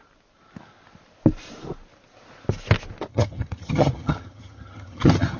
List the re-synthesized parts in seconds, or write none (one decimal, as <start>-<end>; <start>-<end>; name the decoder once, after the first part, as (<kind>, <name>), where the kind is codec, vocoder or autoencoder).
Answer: 3.1-5.4 (vocoder, HiFi-GAN)